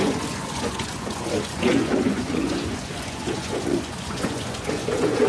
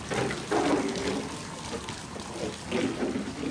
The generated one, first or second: first